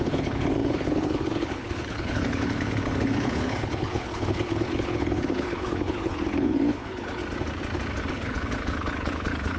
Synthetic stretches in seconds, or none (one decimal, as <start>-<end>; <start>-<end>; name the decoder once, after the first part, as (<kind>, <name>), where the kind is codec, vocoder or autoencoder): 0.0-7.2 (codec, HILCodec); 8.1-9.6